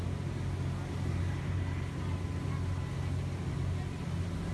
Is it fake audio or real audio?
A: real